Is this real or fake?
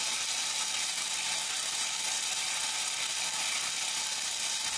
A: real